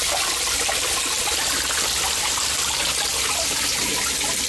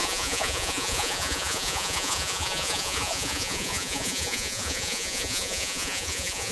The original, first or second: first